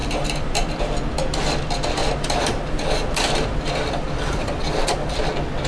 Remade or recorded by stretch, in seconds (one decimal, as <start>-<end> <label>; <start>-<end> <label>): 0.0-0.8 remade; 0.8-2.0 recorded; 2.0-5.3 remade; 5.3-5.7 recorded